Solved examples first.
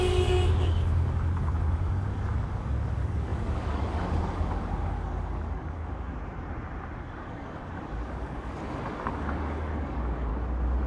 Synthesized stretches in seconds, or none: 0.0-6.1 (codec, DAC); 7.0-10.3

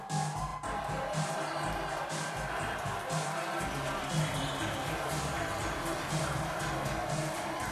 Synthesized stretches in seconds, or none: 0.5-2.1 (vocoder, BigVGAN v2); 5.6-6.2

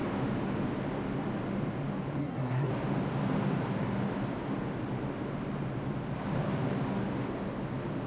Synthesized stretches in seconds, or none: 2.2-2.7 (codec, SNAC)

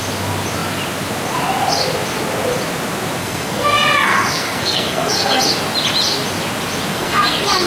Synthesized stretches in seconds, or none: 3.2-5.4 (codec, SNAC); 6.9-7.7

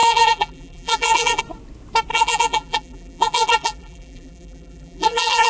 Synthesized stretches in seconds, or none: 0.0-1.4 (vocoder, BigVGAN v2); 2.1-5.5

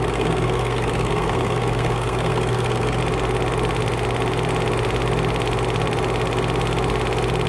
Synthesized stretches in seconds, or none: 0.0-3.0 (codec, SNAC)

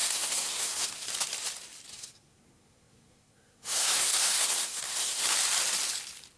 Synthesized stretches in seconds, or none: 0.0-1.1 (codec, SNAC); 1.9-5.2